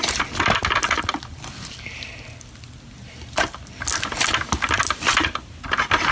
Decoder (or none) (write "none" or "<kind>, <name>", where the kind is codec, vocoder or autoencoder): none